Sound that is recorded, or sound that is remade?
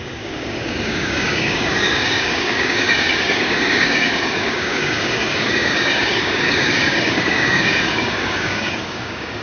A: remade